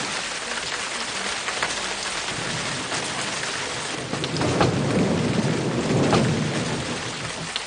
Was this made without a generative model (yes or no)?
yes